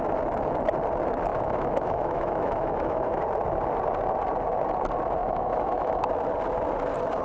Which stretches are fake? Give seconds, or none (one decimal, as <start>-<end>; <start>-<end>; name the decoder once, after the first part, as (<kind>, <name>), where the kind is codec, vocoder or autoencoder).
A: 1.3-3.2 (autoencoder, DAC-VAE); 5.2-6.1